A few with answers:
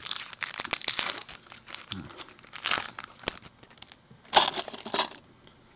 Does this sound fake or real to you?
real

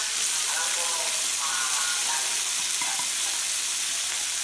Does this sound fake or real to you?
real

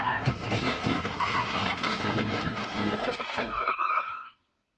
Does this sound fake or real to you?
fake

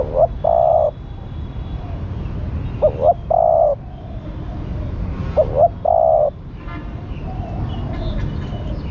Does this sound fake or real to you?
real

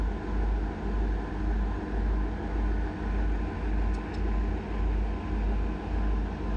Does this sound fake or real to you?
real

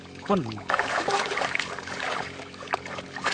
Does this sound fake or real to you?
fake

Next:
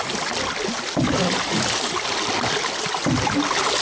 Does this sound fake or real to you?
real